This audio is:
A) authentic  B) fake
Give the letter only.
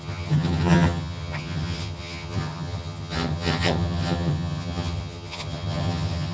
B